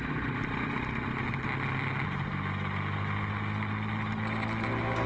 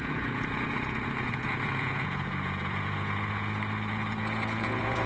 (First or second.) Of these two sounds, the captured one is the first